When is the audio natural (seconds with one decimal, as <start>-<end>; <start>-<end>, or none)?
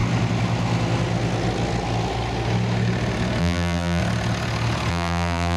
0.0-3.4; 4.0-4.9